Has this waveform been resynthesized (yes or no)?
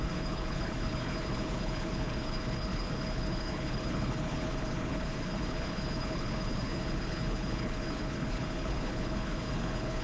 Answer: yes